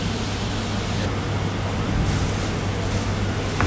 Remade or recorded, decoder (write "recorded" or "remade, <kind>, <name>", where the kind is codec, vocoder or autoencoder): recorded